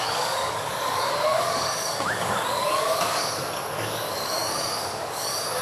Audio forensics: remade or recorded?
remade